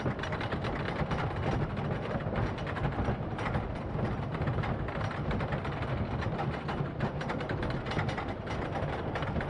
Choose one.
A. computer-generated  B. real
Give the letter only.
B